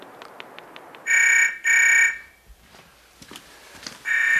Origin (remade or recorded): recorded